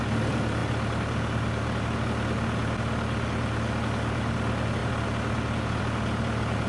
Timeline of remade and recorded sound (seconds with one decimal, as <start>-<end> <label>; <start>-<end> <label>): 0.0-6.7 recorded